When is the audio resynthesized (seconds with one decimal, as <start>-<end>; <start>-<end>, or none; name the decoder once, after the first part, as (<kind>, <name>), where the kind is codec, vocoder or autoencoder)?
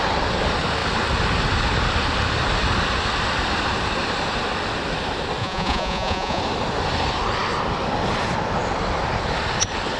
5.4-6.4 (vocoder, Vocos)